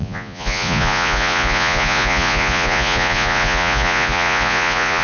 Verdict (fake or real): fake